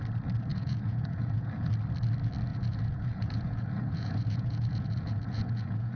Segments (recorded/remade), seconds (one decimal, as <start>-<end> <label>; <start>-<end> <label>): 0.0-0.5 recorded; 0.5-1.7 remade; 1.7-2.5 recorded; 2.5-6.0 remade